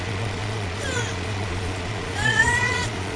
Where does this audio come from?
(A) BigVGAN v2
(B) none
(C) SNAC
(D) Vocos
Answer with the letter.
D